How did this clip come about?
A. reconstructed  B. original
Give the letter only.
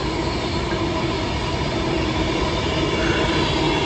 B